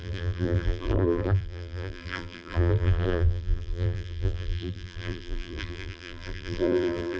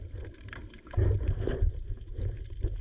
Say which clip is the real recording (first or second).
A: second